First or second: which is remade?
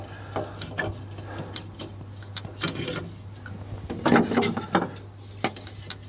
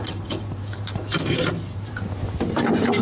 second